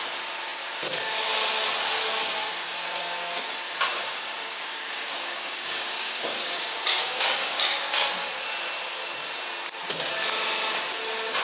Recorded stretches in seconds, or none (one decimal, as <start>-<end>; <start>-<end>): 0.0-3.9; 8.1-11.4